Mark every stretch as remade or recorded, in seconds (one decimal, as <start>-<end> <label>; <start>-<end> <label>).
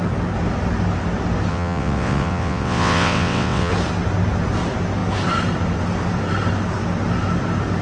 0.0-1.5 recorded; 1.5-3.7 remade; 3.7-7.8 recorded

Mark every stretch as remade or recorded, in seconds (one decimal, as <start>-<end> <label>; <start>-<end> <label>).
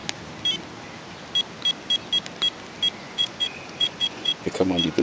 0.0-3.0 recorded; 3.0-5.0 remade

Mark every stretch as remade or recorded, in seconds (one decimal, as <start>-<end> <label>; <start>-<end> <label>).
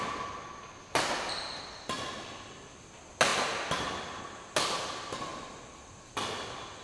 0.0-6.8 recorded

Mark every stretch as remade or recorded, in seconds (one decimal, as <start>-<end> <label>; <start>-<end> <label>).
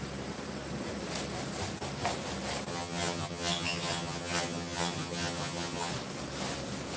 0.0-2.7 recorded; 2.7-5.9 remade; 5.9-7.0 recorded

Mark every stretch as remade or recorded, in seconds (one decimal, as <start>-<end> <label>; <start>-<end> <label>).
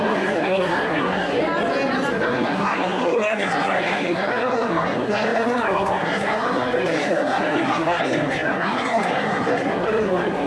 0.0-1.4 remade; 1.4-2.1 recorded; 2.1-10.5 remade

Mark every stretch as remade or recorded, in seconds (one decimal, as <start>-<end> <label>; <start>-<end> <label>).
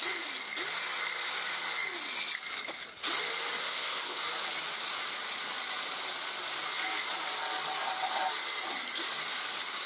0.0-3.6 recorded; 3.6-4.2 remade; 4.2-9.9 recorded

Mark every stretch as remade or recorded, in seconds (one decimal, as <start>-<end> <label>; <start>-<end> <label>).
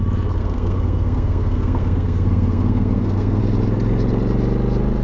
0.0-0.4 recorded; 0.4-3.4 remade; 3.4-5.0 recorded